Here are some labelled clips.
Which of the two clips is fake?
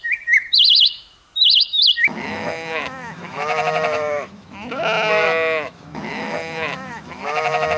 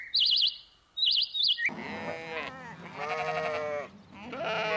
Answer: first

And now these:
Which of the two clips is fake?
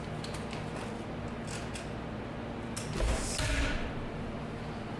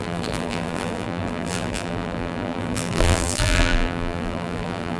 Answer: second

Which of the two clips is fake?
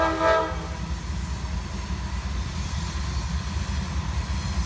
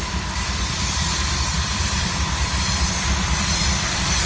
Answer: second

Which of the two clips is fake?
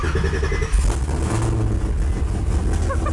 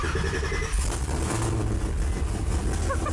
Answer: second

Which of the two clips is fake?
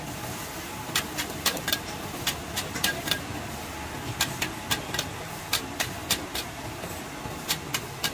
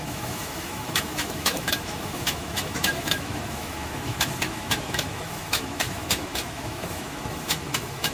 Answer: second